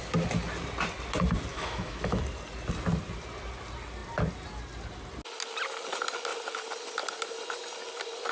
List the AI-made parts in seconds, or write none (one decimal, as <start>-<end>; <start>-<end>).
1.5-2.2